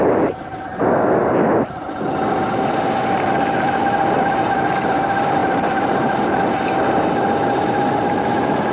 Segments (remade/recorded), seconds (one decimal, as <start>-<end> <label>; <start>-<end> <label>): 0.0-8.7 recorded